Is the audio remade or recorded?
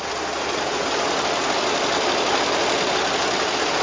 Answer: recorded